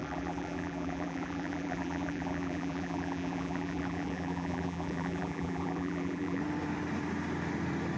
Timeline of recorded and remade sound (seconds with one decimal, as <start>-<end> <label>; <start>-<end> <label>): 0.0-6.4 remade; 6.4-8.0 recorded